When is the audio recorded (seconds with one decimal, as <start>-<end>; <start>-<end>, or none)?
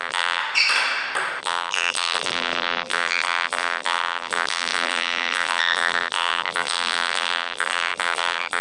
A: 0.4-1.4